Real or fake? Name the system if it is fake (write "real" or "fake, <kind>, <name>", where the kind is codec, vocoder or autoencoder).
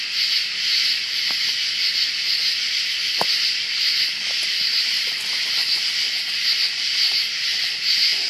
real